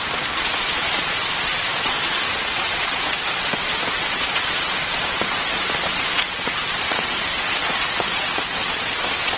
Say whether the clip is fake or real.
fake